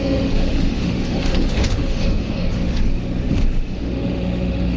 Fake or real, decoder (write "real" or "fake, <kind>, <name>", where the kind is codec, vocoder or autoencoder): fake, autoencoder, DAC-VAE